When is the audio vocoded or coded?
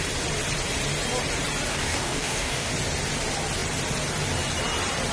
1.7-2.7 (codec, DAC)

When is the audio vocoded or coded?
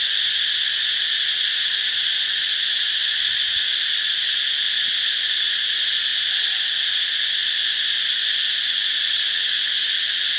none